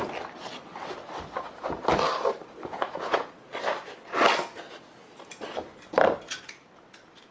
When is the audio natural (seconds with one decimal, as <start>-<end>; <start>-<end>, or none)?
0.0-2.7; 3.3-7.3